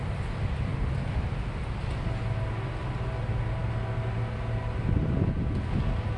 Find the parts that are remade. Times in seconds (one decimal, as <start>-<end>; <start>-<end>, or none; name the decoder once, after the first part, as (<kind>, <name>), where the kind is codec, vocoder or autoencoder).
none